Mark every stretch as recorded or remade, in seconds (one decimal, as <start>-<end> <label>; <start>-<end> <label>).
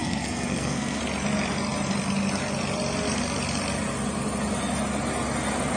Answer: 0.0-1.0 remade; 1.0-5.8 recorded